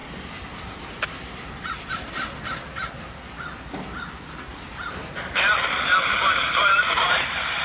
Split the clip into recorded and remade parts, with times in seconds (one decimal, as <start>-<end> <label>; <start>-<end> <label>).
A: 0.0-1.9 remade; 1.9-4.5 recorded; 4.5-7.6 remade